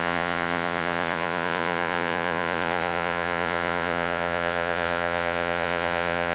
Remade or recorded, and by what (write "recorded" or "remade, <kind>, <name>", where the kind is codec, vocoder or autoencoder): remade, vocoder, Vocos